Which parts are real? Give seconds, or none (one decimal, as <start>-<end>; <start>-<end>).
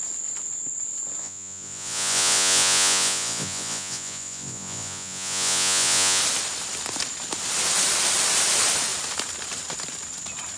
0.0-1.2; 6.2-10.6